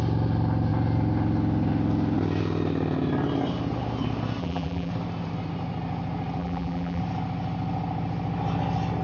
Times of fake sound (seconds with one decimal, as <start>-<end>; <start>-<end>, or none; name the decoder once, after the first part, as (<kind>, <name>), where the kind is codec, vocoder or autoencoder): 4.4-4.9 (vocoder, BigVGAN v2); 6.4-7.0